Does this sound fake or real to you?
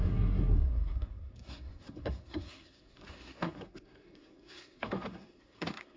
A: fake